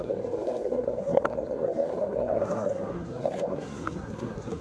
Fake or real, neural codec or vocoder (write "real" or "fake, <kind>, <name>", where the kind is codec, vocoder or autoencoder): fake, codec, SNAC